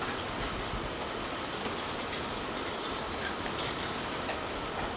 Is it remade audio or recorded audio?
recorded